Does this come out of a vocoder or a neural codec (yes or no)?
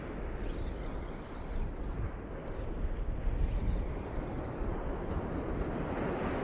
no